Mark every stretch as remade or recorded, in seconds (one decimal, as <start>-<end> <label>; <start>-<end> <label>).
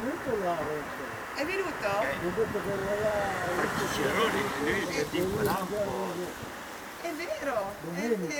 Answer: 0.0-2.8 recorded; 2.8-7.8 remade; 7.8-8.4 recorded